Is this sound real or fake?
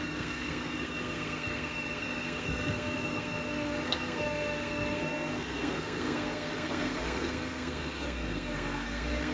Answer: fake